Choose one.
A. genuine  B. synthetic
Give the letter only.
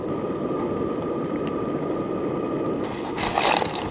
A